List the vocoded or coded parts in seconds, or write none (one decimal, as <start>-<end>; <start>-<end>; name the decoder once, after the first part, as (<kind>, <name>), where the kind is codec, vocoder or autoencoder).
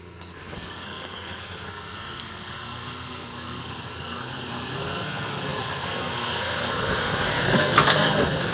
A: 0.0-8.5 (codec, SNAC)